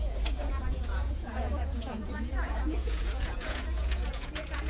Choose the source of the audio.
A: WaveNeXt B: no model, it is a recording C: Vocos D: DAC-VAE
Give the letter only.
C